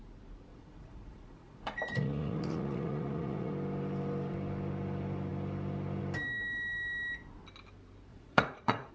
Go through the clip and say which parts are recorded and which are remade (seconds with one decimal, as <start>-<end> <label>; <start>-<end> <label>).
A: 0.0-0.5 recorded; 0.5-3.5 remade; 3.5-8.1 recorded; 8.1-8.9 remade